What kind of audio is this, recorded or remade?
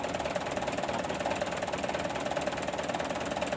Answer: recorded